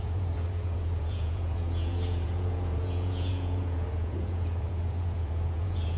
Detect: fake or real fake